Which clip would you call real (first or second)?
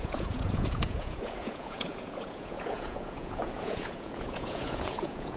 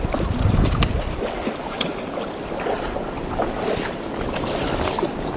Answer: second